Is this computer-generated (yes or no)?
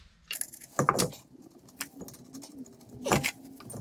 no